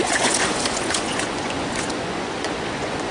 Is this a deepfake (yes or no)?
yes